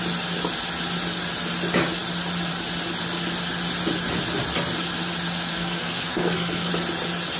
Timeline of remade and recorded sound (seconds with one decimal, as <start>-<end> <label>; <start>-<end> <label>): 0.0-5.5 recorded; 5.5-6.7 remade; 6.7-7.4 recorded